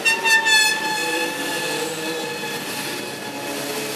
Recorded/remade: recorded